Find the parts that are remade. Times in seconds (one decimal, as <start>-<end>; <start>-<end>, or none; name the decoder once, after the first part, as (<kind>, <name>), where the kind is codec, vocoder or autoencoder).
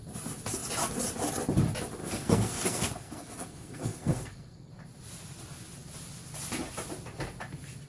2.0-4.7 (codec, SNAC)